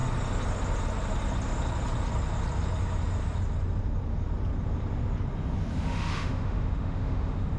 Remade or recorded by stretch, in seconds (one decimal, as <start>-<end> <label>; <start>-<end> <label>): 0.0-5.7 recorded; 5.7-7.6 remade